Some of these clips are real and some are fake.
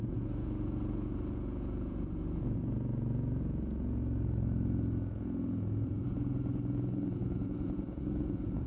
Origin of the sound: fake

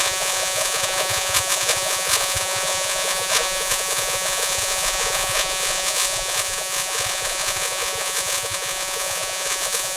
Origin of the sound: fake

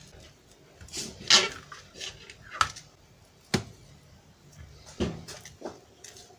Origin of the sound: real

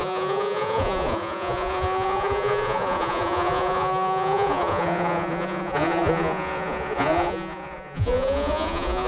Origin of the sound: fake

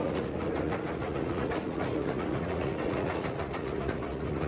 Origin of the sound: fake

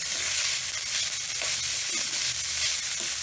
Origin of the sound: real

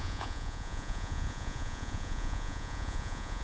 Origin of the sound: fake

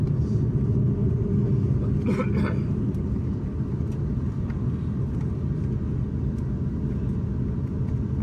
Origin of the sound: real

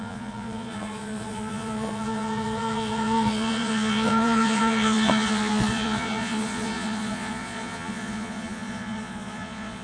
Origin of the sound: fake